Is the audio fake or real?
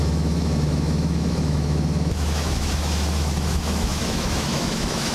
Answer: fake